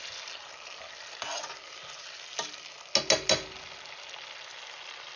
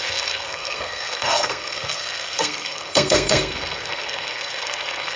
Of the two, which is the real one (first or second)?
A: first